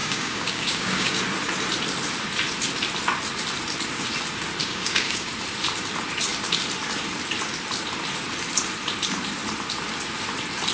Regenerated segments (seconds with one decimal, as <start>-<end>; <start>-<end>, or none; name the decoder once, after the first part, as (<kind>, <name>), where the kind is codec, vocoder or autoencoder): 0.0-1.2 (codec, DAC); 4.6-5.3